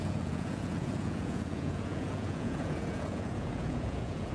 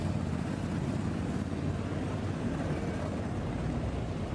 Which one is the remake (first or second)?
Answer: first